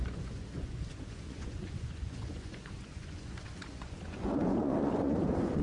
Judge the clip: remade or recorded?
remade